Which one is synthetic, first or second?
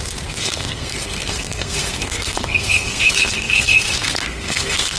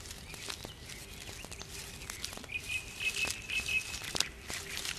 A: first